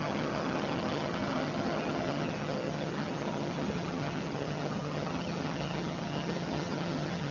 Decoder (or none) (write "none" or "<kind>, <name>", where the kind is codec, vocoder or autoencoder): vocoder, HiFi-GAN